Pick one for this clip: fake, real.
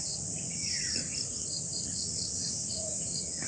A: fake